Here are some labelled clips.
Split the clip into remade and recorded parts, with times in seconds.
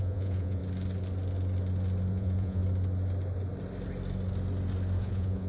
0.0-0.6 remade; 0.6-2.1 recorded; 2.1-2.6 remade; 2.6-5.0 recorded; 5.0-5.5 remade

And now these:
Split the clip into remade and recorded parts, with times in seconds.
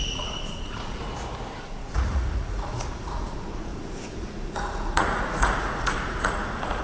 0.0-1.0 remade; 1.0-1.6 recorded; 1.6-6.8 remade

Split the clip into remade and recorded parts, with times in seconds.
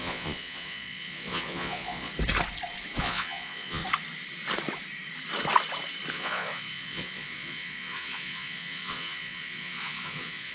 0.0-2.1 remade; 2.1-3.0 recorded; 3.0-3.8 remade; 3.8-6.1 recorded; 6.1-10.5 remade